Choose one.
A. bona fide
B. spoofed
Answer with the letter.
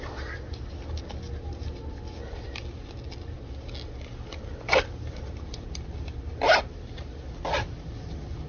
A